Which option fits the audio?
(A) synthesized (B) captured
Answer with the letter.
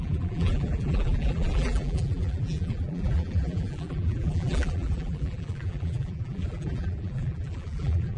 A